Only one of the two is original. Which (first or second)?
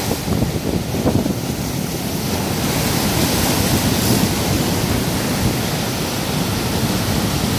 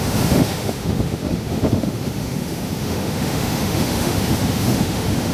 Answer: first